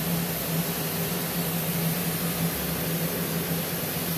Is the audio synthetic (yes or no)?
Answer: no